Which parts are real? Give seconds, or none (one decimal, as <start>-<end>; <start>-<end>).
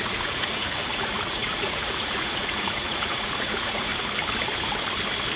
3.9-5.4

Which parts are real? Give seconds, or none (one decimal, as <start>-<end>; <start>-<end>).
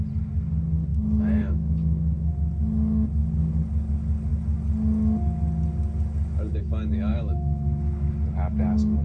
0.0-0.9; 2.3-7.1; 8.1-9.0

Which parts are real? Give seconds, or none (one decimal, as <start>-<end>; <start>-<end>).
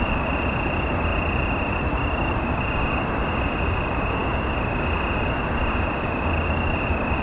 0.0-7.2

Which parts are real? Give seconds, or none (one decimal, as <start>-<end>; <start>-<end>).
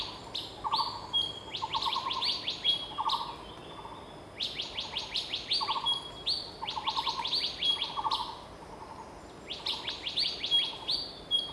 0.0-11.5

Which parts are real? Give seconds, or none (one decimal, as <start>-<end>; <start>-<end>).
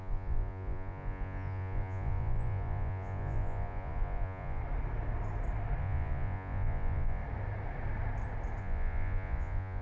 4.6-5.8; 7.2-8.6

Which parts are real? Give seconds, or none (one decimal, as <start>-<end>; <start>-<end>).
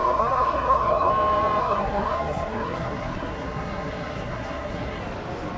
1.1-1.6; 5.0-5.6